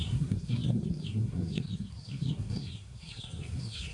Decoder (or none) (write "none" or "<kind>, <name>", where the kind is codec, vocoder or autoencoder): codec, SNAC